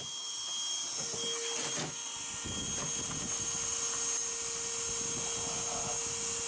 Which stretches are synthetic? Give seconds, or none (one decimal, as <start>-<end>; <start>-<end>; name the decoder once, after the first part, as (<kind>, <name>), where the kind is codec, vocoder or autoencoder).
none